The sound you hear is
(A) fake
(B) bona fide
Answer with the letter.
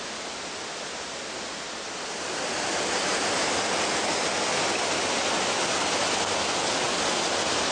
B